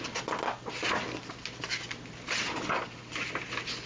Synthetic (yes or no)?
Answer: no